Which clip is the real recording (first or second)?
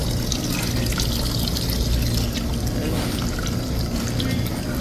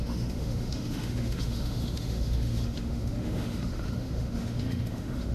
first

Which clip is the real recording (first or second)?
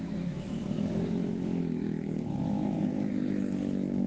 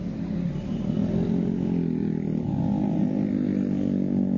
second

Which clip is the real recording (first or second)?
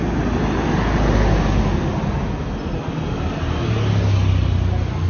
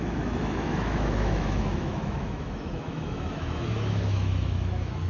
first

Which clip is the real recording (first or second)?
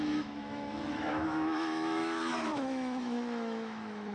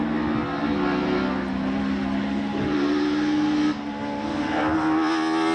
second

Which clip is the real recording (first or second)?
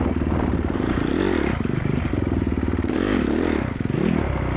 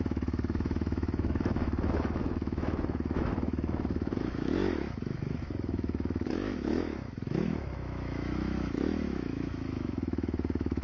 first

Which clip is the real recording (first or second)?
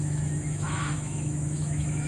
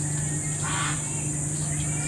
second